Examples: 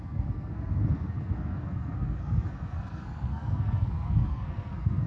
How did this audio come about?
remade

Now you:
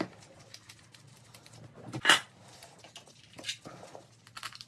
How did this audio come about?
recorded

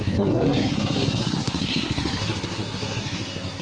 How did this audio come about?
remade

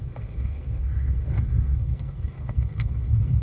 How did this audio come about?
remade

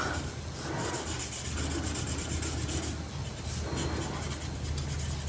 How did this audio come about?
recorded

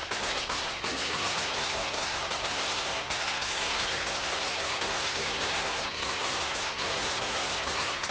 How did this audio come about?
remade